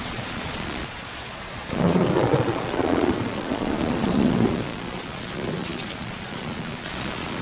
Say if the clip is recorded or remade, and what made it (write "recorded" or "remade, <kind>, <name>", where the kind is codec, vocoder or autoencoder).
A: remade, vocoder, Vocos